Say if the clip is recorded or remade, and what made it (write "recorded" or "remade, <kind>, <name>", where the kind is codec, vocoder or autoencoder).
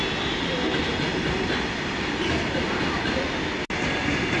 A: recorded